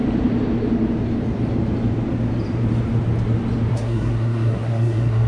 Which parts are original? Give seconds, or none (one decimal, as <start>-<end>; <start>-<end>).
0.0-3.7